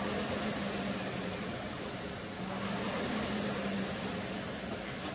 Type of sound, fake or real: real